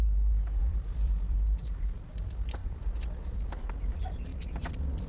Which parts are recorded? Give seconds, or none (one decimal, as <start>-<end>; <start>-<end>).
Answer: 0.0-0.6; 2.1-2.6; 3.5-4.3

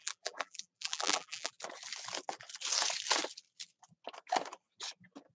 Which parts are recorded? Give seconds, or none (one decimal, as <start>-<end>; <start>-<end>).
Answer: 1.5-5.3